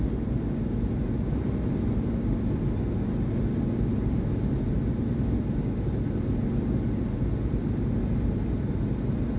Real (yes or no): yes